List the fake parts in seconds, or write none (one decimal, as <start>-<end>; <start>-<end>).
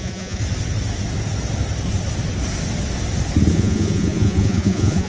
0.0-0.4; 3.5-5.1